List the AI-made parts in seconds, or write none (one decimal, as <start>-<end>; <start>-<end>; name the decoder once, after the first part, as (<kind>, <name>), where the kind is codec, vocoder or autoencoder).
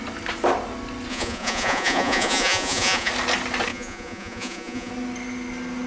1.1-3.1 (vocoder, Vocos); 3.7-4.9